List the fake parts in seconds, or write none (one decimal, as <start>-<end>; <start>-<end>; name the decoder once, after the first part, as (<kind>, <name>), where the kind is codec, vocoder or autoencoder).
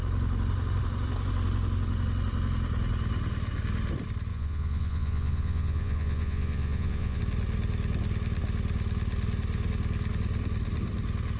4.3-7.2 (vocoder, Vocos)